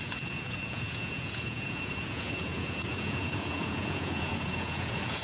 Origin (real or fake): fake